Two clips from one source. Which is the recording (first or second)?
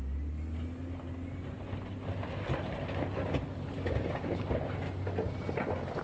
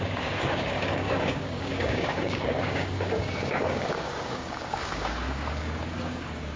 first